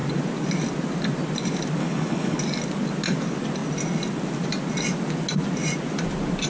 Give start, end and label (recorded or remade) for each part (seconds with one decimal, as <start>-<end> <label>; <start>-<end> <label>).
0.0-1.8 recorded; 1.8-2.4 remade; 2.4-6.5 recorded